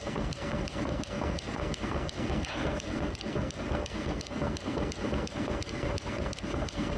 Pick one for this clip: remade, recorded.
remade